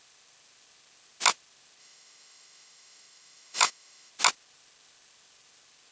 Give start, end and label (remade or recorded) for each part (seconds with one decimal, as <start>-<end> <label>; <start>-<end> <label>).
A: 0.0-1.8 recorded; 1.8-4.1 remade; 4.1-5.9 recorded